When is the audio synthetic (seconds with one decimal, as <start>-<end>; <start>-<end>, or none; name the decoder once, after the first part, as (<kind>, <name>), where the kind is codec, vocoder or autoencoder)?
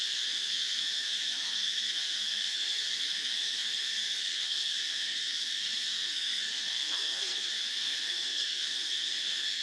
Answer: 0.0-9.6 (codec, SNAC)